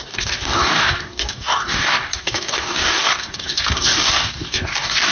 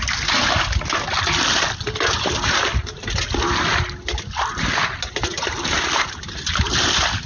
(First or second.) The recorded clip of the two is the second